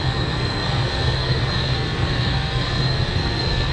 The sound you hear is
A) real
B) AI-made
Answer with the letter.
B